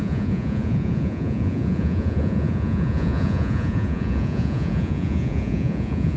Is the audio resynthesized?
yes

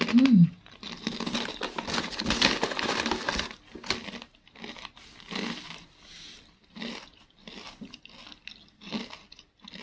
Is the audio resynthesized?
no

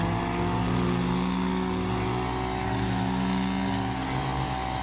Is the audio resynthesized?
no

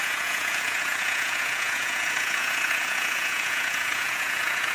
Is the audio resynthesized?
yes